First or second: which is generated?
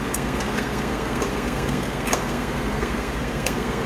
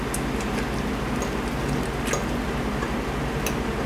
first